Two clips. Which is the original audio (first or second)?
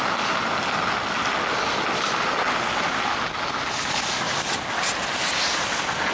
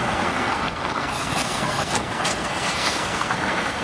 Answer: first